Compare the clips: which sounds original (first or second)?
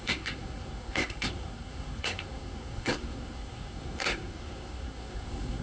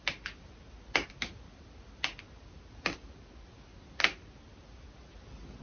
second